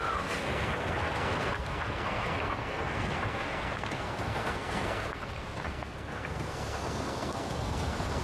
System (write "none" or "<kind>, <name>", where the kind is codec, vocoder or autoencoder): codec, SNAC